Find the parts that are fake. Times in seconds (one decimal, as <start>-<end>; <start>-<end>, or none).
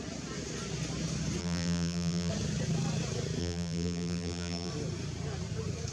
1.4-2.3; 3.4-4.7